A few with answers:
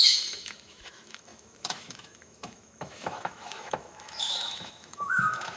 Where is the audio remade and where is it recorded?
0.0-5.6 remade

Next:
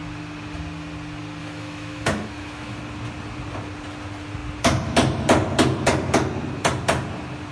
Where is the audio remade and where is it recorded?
0.0-1.4 recorded; 1.4-2.8 remade; 2.8-7.5 recorded

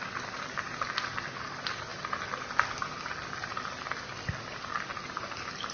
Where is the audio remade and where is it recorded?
0.0-5.7 recorded